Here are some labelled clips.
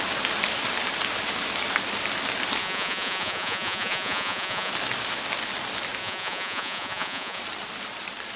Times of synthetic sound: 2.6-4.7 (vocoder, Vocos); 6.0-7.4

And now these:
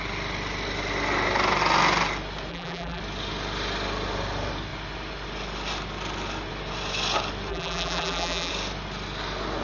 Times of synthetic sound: 2.5-3.0 (vocoder, BigVGAN v2); 7.5-8.5